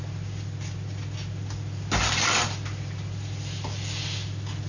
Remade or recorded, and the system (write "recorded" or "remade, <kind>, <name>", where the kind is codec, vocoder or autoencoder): recorded